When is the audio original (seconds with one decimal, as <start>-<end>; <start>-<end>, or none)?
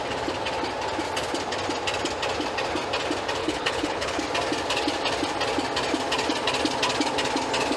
0.0-3.4; 4.2-7.8